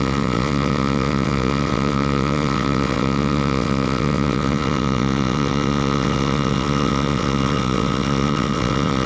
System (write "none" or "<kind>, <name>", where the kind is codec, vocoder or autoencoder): vocoder, WaveNeXt